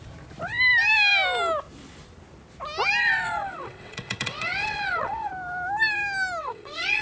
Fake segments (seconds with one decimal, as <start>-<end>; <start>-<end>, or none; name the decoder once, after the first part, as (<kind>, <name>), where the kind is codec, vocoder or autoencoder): 3.0-5.3 (vocoder, WaveNeXt); 6.4-7.0